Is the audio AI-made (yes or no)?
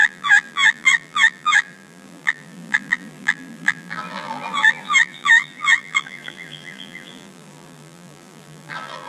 yes